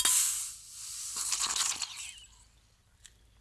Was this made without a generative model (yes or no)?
yes